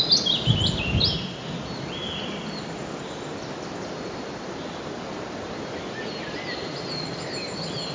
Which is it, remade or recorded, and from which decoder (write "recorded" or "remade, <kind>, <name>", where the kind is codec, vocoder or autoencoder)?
recorded